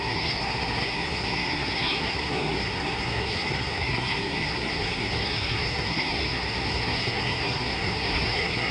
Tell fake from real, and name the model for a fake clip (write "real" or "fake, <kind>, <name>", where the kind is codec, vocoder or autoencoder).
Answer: fake, codec, SNAC